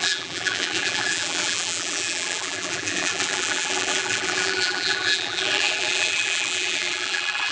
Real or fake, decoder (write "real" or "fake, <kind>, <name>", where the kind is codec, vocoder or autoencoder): fake, vocoder, BigVGAN v2